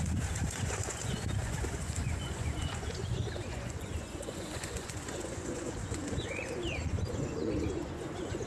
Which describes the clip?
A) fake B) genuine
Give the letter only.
A